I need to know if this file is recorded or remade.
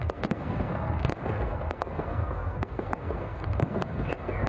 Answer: remade